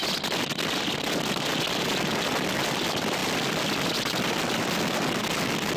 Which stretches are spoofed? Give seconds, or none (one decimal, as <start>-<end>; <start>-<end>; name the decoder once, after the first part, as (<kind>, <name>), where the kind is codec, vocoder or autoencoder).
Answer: 3.2-5.2 (vocoder, BigVGAN v2)